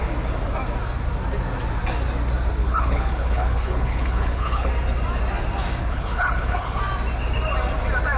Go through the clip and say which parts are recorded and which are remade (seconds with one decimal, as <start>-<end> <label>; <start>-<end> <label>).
0.0-2.6 recorded; 2.6-4.7 remade; 4.7-5.8 recorded; 5.8-6.8 remade; 6.8-8.2 recorded

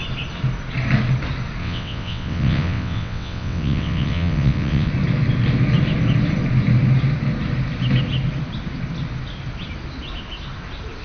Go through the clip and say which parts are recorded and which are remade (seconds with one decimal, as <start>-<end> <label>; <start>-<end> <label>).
0.0-1.6 recorded; 1.6-4.9 remade; 4.9-11.0 recorded

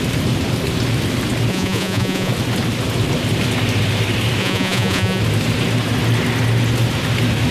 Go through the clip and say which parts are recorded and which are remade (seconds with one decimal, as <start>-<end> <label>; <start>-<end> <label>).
0.0-1.5 recorded; 1.5-2.3 remade; 2.3-4.4 recorded; 4.4-5.2 remade; 5.2-7.5 recorded

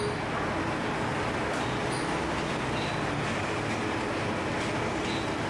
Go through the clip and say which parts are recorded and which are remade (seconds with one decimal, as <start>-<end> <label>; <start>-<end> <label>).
0.0-5.5 recorded

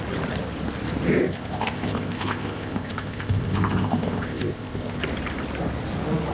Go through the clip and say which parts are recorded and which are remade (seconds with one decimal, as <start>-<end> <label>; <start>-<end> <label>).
0.0-1.2 recorded; 1.2-5.0 remade; 5.0-6.3 recorded

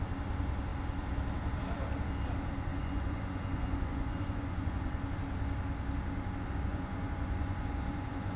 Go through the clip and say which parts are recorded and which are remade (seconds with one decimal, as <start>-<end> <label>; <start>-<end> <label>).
0.0-2.7 recorded; 2.7-4.9 remade; 4.9-6.7 recorded; 6.7-8.4 remade